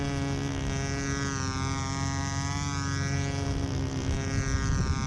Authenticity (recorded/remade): recorded